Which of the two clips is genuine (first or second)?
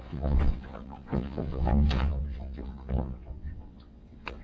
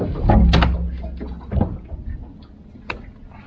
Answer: second